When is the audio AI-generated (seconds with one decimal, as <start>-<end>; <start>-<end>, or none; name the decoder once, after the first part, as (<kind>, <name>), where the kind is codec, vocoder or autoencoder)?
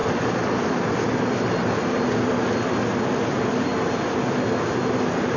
none